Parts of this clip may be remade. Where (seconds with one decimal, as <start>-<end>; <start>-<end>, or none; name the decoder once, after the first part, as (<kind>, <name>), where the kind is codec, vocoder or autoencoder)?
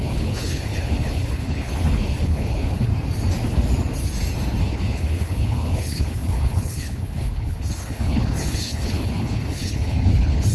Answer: 0.0-2.9 (codec, HILCodec); 4.6-10.5